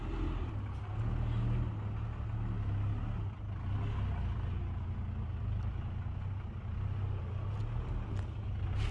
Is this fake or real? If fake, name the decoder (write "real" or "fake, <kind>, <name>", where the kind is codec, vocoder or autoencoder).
real